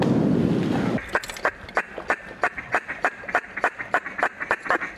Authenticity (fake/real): real